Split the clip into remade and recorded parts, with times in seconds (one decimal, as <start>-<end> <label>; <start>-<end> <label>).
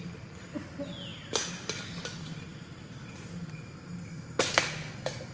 0.0-1.1 recorded; 1.1-1.8 remade; 1.8-5.3 recorded